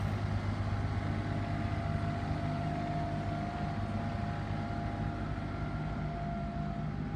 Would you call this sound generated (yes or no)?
no